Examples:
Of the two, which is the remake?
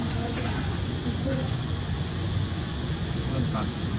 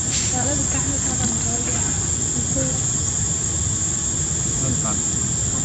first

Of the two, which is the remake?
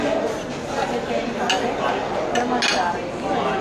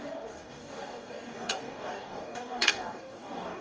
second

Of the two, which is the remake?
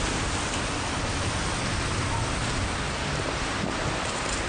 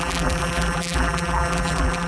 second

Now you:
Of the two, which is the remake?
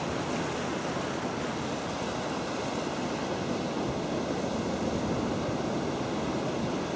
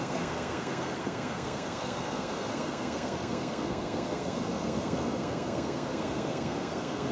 second